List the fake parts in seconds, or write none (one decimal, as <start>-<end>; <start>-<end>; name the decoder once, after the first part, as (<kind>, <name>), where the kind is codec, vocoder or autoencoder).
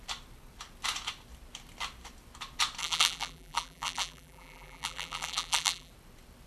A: 2.8-5.9 (vocoder, BigVGAN v2)